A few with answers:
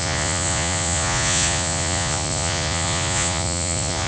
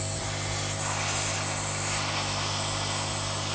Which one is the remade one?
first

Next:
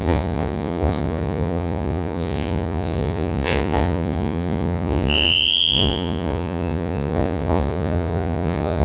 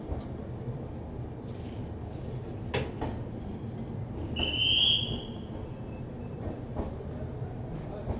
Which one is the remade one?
first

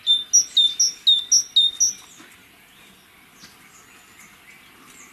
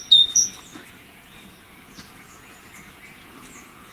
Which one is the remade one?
second